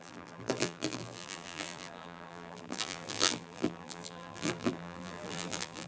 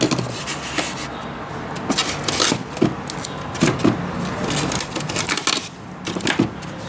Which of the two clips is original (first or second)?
second